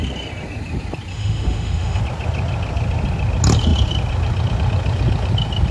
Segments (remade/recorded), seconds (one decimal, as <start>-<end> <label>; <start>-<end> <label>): 0.0-1.1 recorded; 1.1-2.0 remade; 2.0-5.7 recorded